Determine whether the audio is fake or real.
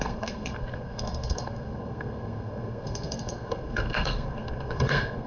fake